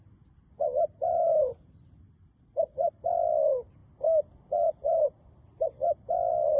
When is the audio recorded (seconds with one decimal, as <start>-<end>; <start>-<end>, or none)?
0.0-2.3; 2.9-6.6